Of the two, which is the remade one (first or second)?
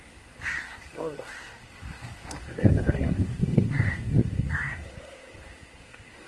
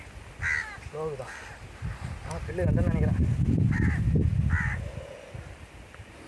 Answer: first